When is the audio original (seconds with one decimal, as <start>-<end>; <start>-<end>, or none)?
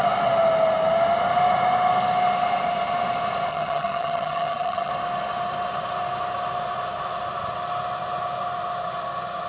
0.0-3.5; 4.9-9.5